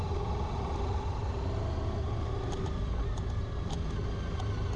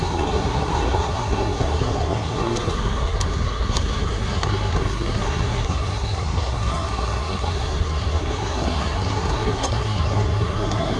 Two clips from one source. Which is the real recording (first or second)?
first